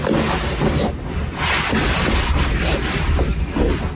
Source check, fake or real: real